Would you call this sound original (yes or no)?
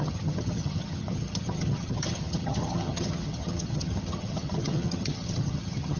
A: no